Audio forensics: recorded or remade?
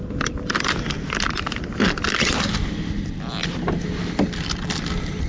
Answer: recorded